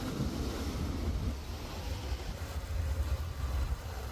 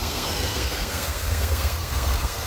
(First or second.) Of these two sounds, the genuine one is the first